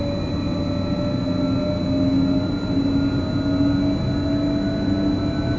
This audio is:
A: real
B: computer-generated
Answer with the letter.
A